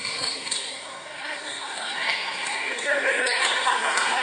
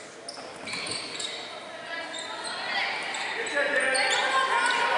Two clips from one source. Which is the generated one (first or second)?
first